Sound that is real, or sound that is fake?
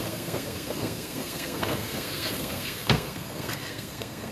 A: fake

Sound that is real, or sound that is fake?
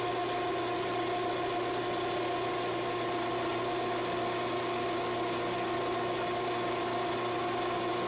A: real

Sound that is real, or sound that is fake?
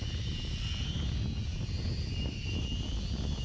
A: real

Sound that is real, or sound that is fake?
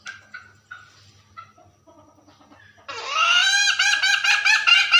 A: real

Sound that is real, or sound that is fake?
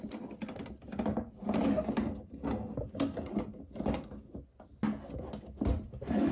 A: real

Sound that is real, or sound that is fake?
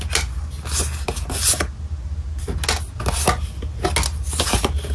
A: real